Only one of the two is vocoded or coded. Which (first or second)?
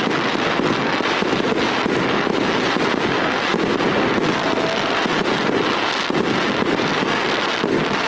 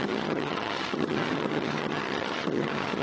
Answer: second